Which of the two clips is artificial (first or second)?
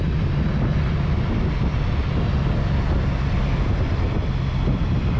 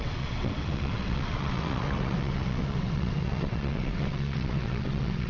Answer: second